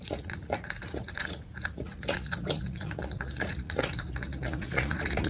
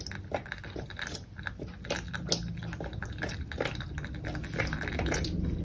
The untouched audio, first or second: second